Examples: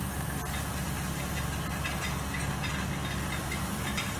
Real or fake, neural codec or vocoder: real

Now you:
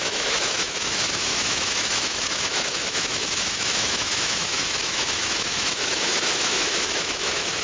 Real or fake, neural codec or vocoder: fake, autoencoder, DAC-VAE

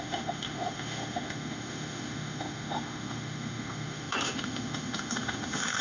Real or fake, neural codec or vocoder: fake, autoencoder, DAC-VAE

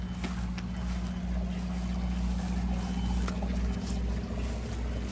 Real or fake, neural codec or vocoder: real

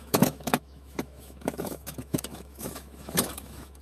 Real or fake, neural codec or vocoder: fake, autoencoder, DAC-VAE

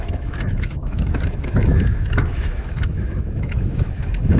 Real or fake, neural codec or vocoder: fake, autoencoder, DAC-VAE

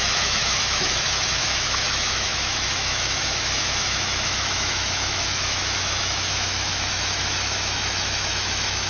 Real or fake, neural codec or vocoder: fake, autoencoder, DAC-VAE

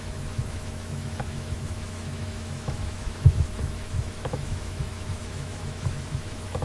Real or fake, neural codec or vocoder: fake, autoencoder, DAC-VAE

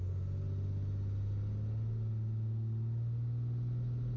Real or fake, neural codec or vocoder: real